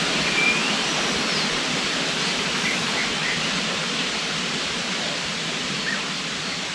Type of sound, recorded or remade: recorded